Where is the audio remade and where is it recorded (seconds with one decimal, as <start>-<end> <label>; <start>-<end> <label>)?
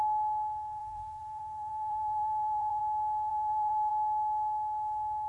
0.0-0.8 recorded; 0.8-2.8 remade; 2.8-3.3 recorded; 3.3-3.9 remade; 3.9-5.3 recorded